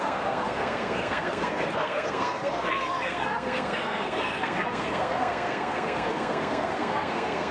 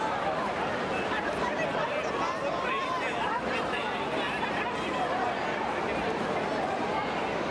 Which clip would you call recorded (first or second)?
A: second